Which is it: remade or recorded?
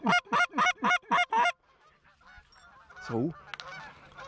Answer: recorded